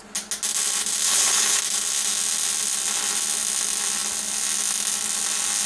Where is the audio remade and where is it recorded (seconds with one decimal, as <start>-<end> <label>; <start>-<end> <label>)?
0.0-1.0 recorded; 1.0-1.6 remade; 1.6-5.7 recorded